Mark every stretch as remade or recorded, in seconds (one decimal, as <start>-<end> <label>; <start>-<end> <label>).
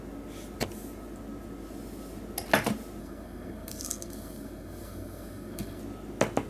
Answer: 0.0-3.0 recorded; 3.0-5.8 remade; 5.8-6.5 recorded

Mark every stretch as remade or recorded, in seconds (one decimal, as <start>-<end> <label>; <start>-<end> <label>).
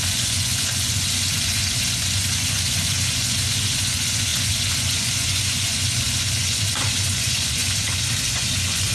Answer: 0.0-8.9 remade